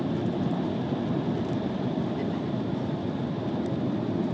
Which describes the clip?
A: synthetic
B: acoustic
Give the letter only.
A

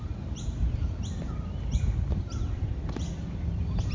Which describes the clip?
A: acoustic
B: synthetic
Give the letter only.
A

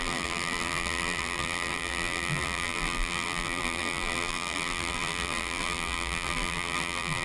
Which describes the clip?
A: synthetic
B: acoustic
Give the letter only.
A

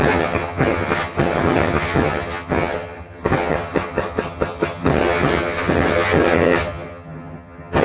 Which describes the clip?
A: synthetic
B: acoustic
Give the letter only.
A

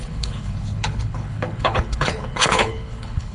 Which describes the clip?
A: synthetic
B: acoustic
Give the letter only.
A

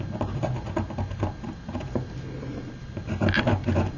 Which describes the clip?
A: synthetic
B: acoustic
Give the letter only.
B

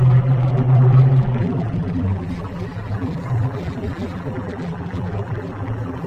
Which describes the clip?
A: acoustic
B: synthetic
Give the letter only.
B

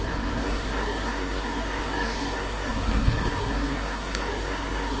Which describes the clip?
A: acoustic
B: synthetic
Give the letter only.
B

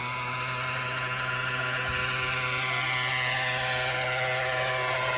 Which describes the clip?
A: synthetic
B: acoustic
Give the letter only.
B